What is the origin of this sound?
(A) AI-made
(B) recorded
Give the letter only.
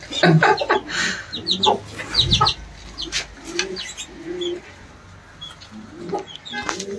B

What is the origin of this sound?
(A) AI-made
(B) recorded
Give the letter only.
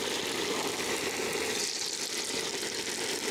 B